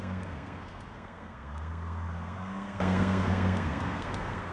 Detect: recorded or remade remade